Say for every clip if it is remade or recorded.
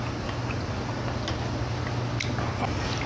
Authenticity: recorded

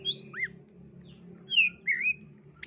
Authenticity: recorded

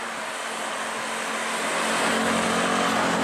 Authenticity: recorded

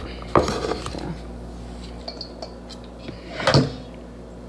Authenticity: recorded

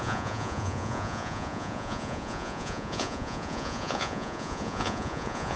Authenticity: remade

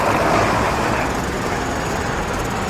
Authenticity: recorded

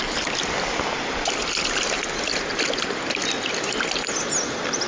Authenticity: recorded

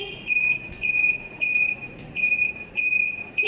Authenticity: remade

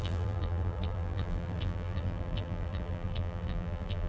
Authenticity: remade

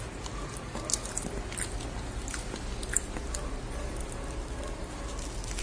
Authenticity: recorded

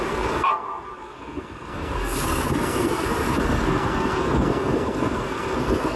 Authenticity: remade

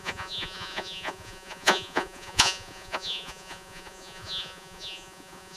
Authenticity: remade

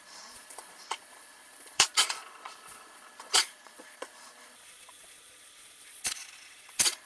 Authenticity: remade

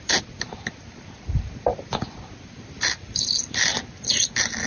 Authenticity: recorded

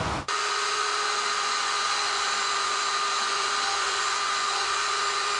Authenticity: remade